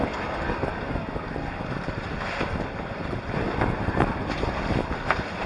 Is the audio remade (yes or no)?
no